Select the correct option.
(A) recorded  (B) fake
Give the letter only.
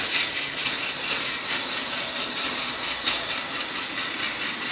A